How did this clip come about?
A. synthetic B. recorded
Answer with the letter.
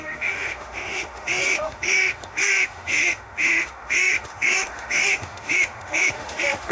A